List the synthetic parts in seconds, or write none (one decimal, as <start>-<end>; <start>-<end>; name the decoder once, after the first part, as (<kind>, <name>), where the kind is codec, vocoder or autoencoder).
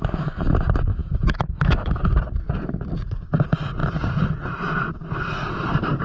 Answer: 1.0-2.0 (autoencoder, DAC-VAE)